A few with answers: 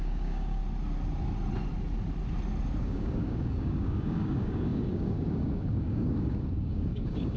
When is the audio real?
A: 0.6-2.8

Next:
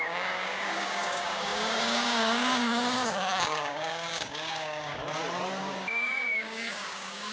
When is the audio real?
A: 5.0-5.6

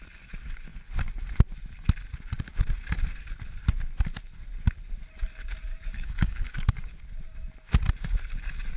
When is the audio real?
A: 0.0-5.7; 7.0-8.8

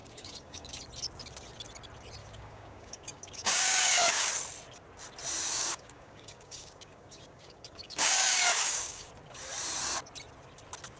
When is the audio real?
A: 0.8-2.2; 4.3-5.6; 9.1-11.0

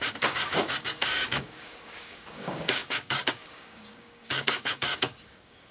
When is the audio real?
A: none

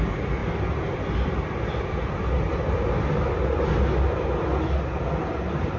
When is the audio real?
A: 0.0-5.8

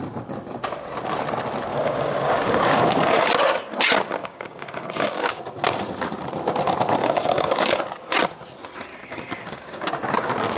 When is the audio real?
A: 0.0-1.7; 3.3-4.2; 5.4-7.0; 7.8-8.9; 9.9-10.6